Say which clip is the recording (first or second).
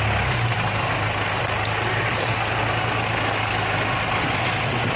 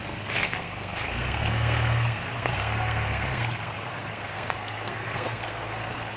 first